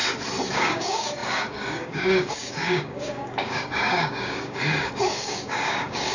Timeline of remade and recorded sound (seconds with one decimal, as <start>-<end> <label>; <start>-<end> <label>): 0.0-0.5 recorded; 0.5-6.1 remade